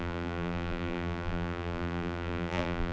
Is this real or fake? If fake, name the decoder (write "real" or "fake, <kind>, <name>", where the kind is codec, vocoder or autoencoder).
fake, vocoder, BigVGAN v2